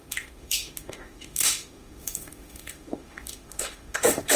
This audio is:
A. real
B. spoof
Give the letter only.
B